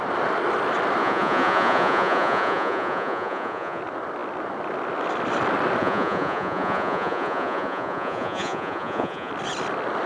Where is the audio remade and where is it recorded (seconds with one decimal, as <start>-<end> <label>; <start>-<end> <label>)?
0.0-1.0 recorded; 1.0-3.8 remade; 3.8-5.8 recorded; 5.8-9.3 remade; 9.3-10.1 recorded